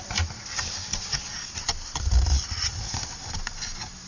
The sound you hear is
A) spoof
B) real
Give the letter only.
B